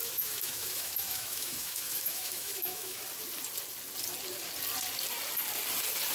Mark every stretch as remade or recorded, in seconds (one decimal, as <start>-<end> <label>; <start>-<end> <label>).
0.0-3.0 remade; 3.0-6.1 recorded